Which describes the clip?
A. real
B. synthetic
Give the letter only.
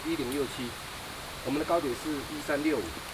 A